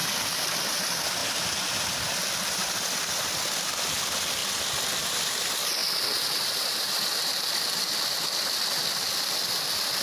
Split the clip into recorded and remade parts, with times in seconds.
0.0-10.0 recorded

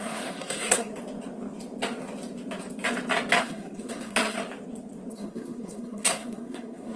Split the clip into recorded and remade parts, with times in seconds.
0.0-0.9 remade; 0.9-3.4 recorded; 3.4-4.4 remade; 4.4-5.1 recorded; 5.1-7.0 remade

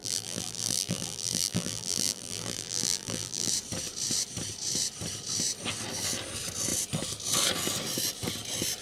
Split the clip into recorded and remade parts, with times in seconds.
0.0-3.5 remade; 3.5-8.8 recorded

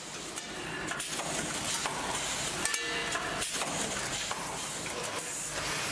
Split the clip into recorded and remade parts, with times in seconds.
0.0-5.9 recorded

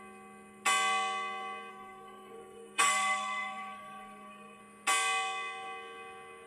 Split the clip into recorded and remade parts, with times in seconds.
0.0-1.7 recorded; 1.7-4.6 remade; 4.6-6.5 recorded